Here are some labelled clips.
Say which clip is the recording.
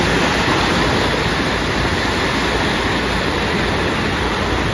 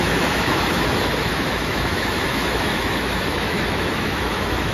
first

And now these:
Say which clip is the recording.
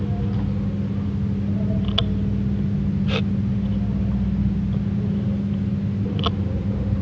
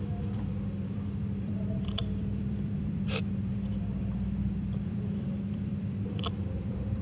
first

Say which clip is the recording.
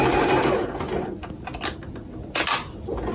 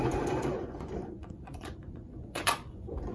first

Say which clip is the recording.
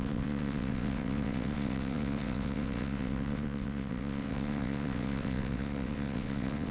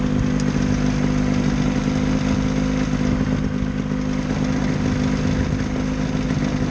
second